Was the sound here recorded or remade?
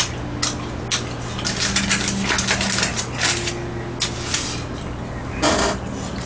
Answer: recorded